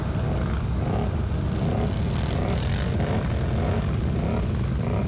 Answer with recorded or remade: recorded